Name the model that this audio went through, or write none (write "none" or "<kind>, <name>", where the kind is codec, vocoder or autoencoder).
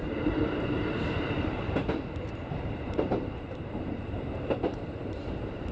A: vocoder, BigVGAN v2